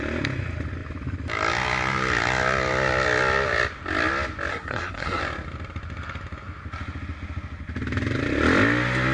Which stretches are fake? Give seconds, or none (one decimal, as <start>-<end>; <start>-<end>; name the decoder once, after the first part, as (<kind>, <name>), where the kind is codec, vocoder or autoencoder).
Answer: 4.5-5.2 (codec, SNAC)